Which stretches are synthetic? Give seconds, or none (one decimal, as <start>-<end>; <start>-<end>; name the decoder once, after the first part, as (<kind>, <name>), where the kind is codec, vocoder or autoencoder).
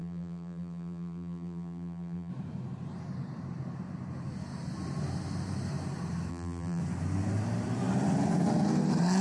0.0-2.3 (vocoder, BigVGAN v2); 6.3-6.8